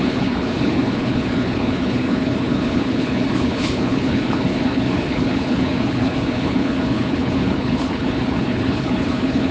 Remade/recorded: remade